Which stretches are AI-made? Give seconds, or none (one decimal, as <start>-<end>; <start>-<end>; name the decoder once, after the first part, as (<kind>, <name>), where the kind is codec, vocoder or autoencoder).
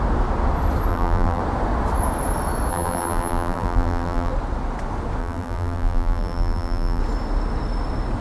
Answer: 0.9-1.4 (vocoder, BigVGAN v2); 2.7-4.3; 5.2-7.0